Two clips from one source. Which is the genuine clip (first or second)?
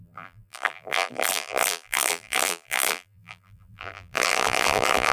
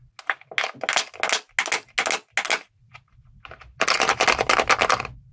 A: second